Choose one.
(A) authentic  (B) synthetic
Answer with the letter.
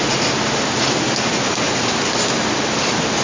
A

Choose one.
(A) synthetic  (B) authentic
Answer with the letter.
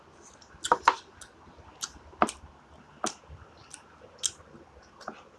B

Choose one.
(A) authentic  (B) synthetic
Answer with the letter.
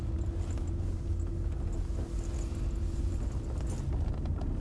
A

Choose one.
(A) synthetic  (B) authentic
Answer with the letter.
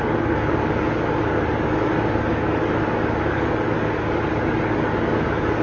A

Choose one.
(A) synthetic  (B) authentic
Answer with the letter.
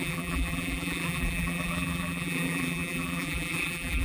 A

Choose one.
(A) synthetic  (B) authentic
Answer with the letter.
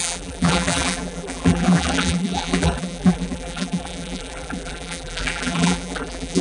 A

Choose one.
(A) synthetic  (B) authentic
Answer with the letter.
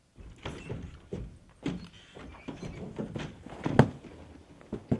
B